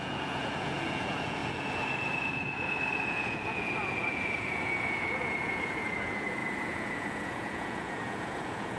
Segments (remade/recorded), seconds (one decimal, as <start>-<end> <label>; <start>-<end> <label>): 0.0-8.8 remade